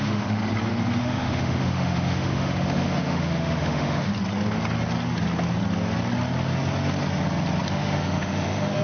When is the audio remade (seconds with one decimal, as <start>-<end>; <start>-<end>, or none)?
0.0-0.4; 1.0-4.1; 7.7-8.8